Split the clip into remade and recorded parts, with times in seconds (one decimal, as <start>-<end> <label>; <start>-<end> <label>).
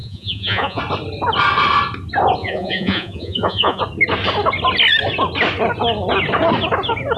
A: 0.0-0.8 remade; 0.8-2.4 recorded; 2.4-3.8 remade; 3.8-7.2 recorded